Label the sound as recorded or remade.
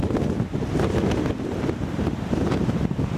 recorded